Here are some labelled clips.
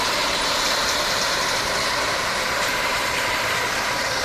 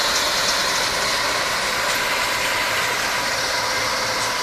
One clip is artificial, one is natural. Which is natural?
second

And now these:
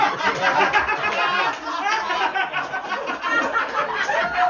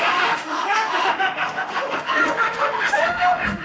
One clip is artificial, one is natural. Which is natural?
first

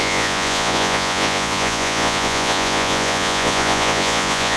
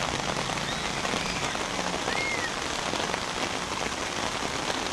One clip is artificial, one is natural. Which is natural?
second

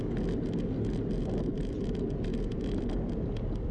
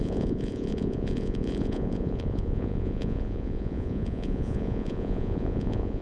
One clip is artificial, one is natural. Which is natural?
first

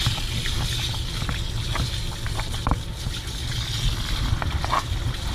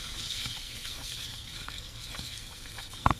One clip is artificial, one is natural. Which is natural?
first